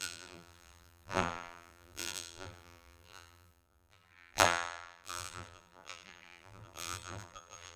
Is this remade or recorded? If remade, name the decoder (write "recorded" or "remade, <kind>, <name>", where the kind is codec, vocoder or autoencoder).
remade, vocoder, BigVGAN v2